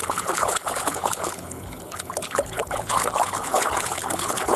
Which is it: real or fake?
fake